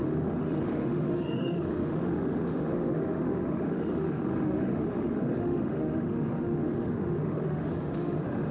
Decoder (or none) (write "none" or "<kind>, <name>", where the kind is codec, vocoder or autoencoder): autoencoder, DAC-VAE